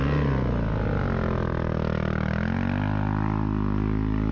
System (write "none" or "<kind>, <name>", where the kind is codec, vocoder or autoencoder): none